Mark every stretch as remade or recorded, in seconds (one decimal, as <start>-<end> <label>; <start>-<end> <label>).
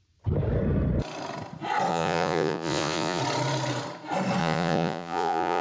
0.0-1.9 recorded; 1.9-3.2 remade; 3.2-4.4 recorded; 4.4-5.6 remade